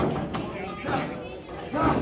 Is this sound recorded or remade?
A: recorded